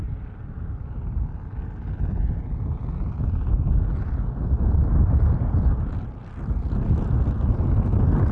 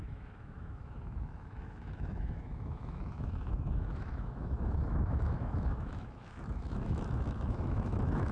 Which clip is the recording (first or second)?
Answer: first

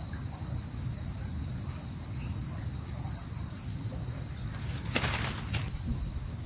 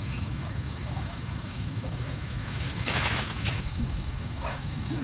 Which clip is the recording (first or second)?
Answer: first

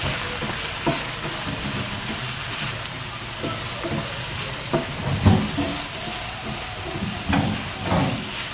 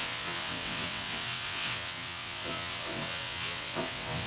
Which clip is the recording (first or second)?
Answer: first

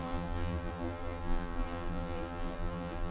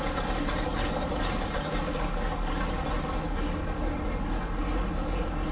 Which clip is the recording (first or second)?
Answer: second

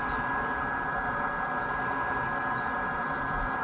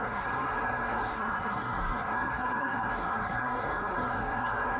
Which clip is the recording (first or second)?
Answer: first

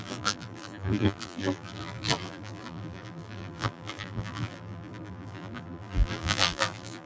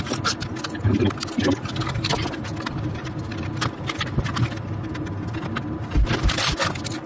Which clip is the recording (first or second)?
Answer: second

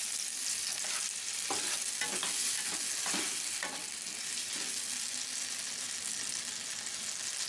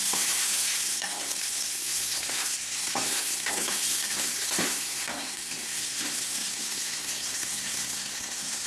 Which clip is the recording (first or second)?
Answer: first